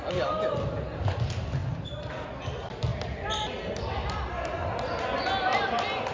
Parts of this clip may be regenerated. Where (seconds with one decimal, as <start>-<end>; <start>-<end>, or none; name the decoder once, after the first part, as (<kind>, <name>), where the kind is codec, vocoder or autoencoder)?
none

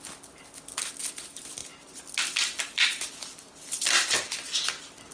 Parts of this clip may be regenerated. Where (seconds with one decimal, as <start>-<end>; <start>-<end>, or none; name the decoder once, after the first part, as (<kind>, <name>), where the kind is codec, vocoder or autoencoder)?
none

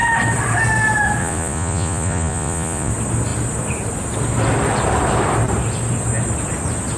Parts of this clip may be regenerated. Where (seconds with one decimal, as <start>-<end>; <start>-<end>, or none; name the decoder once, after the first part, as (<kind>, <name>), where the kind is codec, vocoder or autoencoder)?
1.2-2.9 (vocoder, Vocos)